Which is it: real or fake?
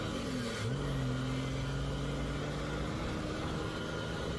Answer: real